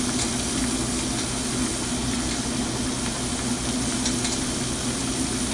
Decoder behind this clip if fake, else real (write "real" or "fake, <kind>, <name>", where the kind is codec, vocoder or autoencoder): real